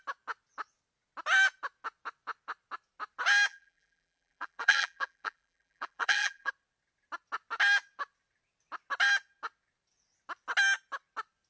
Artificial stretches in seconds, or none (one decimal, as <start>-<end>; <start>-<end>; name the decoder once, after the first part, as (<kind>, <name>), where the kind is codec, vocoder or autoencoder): 3.5-6.5 (vocoder, BigVGAN v2)